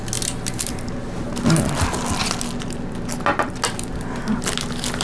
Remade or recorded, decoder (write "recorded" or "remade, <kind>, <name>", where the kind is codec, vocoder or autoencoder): recorded